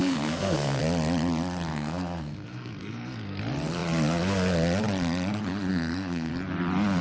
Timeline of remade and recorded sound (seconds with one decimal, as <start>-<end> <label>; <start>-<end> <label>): 0.0-0.8 remade; 0.8-1.7 recorded; 1.7-3.4 remade; 3.4-5.7 recorded; 5.7-6.3 remade; 6.3-7.0 recorded